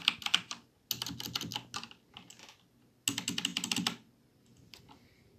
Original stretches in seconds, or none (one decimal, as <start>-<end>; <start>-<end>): 0.0-5.4